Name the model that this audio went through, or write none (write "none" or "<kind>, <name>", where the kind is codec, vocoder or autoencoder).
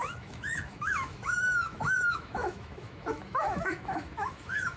autoencoder, DAC-VAE